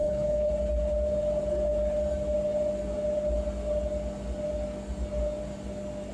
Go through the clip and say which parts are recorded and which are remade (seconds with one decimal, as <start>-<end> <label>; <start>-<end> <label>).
0.0-0.5 remade; 0.5-6.1 recorded